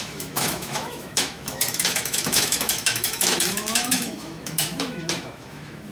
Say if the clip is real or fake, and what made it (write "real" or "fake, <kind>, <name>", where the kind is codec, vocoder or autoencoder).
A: fake, autoencoder, DAC-VAE